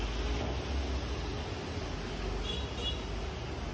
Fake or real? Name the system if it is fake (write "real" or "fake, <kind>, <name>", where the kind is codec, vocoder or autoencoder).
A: real